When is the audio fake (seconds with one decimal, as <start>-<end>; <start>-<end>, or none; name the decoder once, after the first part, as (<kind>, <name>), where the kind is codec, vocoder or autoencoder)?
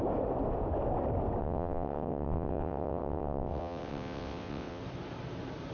1.4-4.8 (vocoder, WaveNeXt)